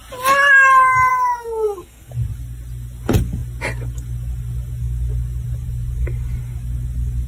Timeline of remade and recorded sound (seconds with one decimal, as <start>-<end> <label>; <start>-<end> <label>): 0.0-1.1 recorded; 1.1-2.1 remade; 2.1-7.3 recorded